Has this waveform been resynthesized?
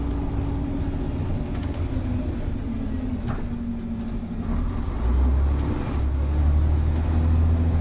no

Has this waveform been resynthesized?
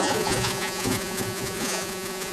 yes